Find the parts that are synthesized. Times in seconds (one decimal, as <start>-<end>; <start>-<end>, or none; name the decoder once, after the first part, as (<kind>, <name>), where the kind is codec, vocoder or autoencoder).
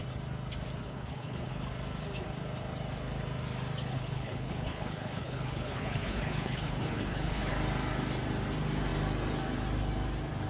0.8-1.5 (codec, HILCodec); 3.9-7.5